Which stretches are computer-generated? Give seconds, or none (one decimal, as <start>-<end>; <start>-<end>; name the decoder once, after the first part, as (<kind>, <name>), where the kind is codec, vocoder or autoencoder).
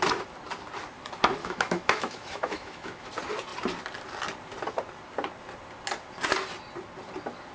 1.4-3.1 (autoencoder, DAC-VAE)